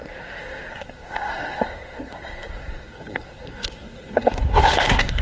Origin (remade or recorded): remade